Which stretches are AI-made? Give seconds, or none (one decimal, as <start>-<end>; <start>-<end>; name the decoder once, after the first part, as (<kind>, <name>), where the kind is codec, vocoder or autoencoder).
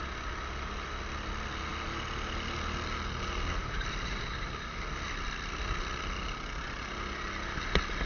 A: none